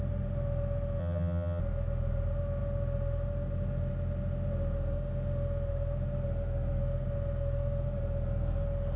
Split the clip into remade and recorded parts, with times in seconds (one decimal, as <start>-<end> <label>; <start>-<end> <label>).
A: 0.0-1.0 recorded; 1.0-1.6 remade; 1.6-9.0 recorded